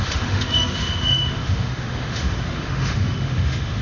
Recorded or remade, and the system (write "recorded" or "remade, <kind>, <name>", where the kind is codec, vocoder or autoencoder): remade, autoencoder, DAC-VAE